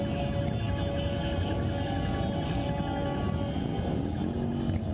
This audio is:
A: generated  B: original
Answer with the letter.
B